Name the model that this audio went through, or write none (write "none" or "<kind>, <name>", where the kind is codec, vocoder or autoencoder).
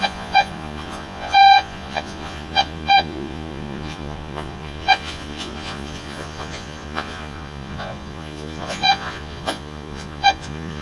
vocoder, Vocos